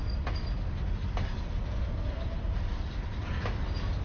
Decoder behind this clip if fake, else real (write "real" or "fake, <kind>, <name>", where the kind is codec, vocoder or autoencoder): real